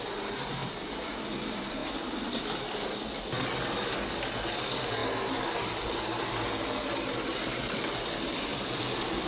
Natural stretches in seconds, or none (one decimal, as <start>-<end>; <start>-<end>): 0.0-0.6; 1.1-8.5